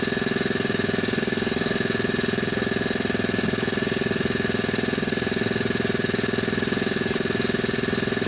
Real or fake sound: fake